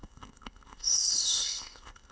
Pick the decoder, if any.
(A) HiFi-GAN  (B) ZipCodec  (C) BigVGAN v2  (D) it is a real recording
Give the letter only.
B